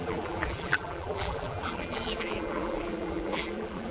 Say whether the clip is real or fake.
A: fake